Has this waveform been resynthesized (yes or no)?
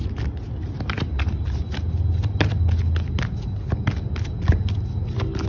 no